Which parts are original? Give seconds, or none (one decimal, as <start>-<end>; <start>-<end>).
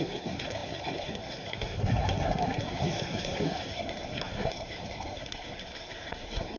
none